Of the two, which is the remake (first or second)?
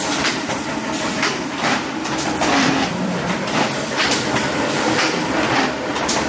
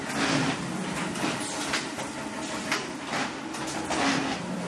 first